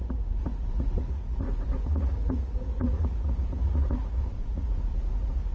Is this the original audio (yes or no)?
no